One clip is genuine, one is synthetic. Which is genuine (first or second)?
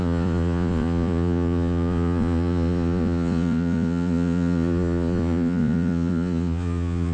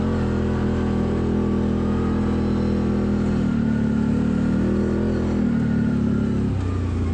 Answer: second